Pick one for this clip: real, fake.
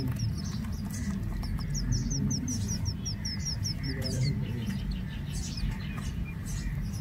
real